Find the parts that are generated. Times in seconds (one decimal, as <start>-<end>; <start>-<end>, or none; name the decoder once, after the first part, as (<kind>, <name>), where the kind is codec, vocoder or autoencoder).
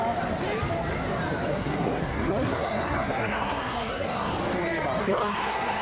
1.5-4.3 (codec, SNAC); 5.0-5.8